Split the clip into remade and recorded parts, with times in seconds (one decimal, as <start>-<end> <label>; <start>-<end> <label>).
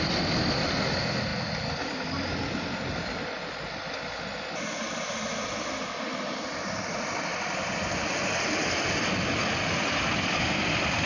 0.0-11.1 recorded